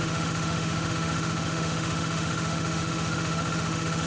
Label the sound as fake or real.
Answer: fake